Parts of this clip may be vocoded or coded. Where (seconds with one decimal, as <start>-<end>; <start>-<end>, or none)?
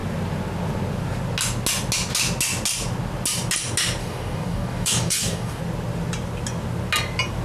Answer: 4.0-5.6